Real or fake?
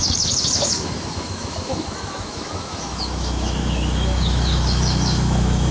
fake